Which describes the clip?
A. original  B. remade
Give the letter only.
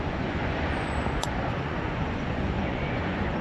B